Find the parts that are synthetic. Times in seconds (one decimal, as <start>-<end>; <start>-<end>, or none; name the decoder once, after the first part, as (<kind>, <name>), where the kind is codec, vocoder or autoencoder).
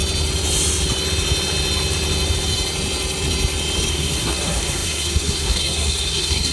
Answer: 3.9-6.5 (codec, SNAC)